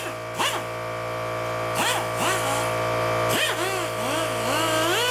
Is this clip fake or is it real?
real